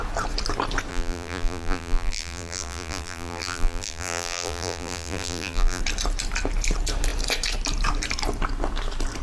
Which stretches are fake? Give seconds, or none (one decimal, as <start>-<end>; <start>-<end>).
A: 0.9-5.8